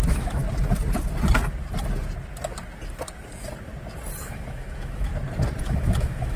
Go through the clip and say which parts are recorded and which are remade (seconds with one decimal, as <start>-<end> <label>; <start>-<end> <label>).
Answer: 0.0-0.4 remade; 0.4-4.2 recorded; 4.2-5.1 remade; 5.1-5.6 recorded; 5.6-6.4 remade